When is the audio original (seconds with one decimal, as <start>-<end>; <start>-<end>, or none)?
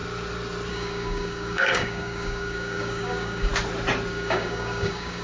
0.0-0.7; 3.5-4.1